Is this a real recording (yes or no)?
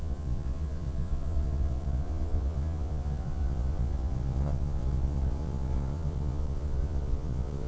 no